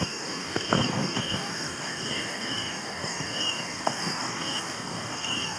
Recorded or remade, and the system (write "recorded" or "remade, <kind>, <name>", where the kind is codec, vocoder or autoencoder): remade, codec, DAC